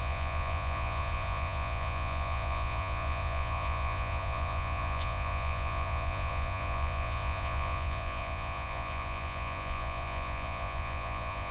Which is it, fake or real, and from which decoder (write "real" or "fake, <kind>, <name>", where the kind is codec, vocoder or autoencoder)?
fake, vocoder, Vocos